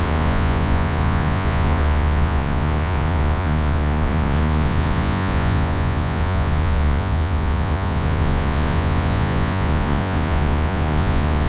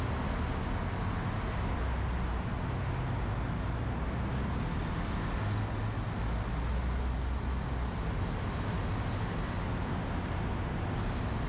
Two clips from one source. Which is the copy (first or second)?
first